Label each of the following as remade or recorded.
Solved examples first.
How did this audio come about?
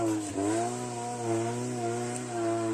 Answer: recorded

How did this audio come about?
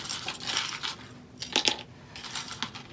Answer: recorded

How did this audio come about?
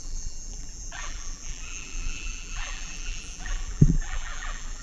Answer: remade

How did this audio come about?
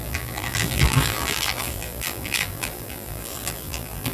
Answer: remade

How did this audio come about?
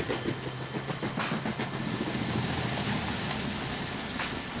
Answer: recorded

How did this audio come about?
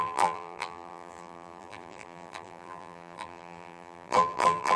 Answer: remade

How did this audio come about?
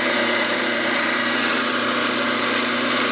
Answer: remade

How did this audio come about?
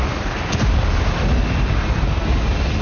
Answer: recorded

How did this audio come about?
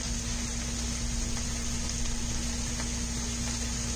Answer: recorded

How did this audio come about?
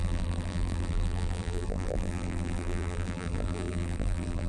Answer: remade